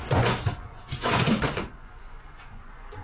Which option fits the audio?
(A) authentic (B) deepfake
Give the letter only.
B